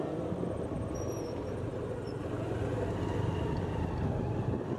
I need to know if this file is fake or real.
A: real